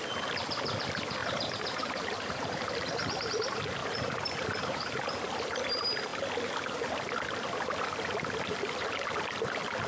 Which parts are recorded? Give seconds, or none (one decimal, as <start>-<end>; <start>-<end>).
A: 0.0-1.2; 2.7-3.8; 5.6-9.9